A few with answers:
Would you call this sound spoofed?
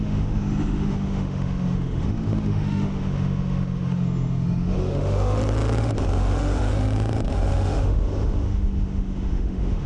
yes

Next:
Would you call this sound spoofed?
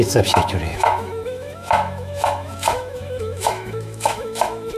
yes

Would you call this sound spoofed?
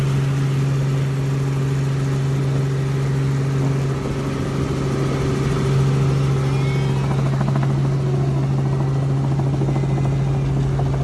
no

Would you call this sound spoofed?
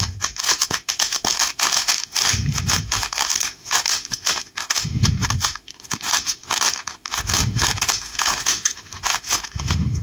yes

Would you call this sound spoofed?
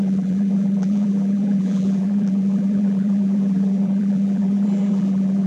yes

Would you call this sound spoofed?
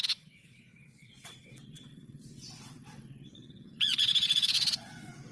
yes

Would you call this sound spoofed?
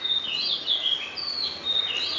no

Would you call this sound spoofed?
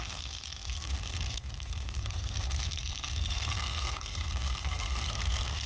yes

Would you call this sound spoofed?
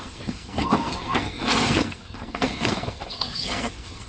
yes